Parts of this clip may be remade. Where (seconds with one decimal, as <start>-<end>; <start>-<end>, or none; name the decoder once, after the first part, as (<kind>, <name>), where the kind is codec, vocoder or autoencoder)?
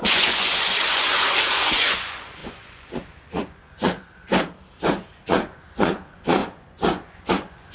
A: 0.0-4.3 (vocoder, Vocos); 4.9-7.7